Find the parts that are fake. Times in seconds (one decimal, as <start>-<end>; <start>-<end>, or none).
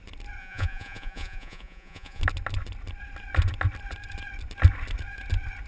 0.4-2.2